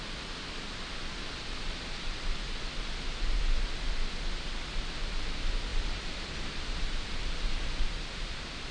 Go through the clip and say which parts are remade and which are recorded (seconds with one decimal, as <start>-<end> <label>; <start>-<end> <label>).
0.0-5.7 recorded; 5.7-7.9 remade; 7.9-8.7 recorded